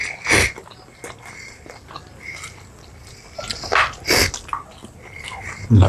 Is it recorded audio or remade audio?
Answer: recorded